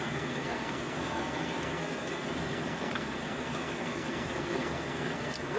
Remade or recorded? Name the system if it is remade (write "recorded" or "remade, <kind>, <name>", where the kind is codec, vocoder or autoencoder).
remade, codec, SNAC